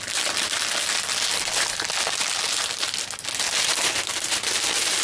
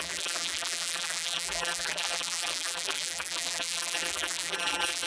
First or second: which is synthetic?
second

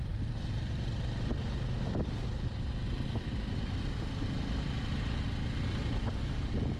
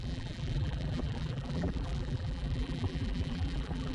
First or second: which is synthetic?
second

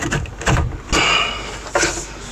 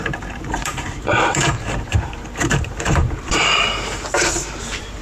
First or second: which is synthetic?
second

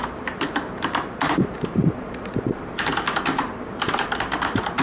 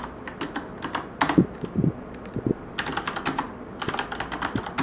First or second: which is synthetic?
first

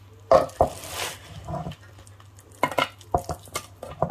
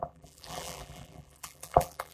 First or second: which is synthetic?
second